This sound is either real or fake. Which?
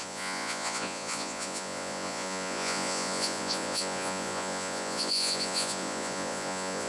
fake